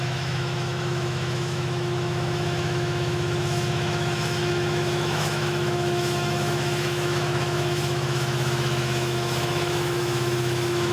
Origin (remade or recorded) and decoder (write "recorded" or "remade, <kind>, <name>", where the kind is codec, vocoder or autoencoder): remade, autoencoder, DAC-VAE